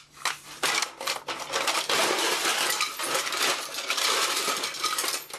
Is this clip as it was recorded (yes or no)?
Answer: yes